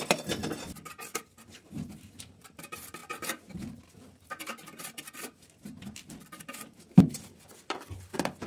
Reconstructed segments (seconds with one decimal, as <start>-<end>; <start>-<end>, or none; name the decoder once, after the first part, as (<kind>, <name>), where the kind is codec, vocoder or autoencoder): 0.0-0.4 (vocoder, BigVGAN v2); 1.1-8.5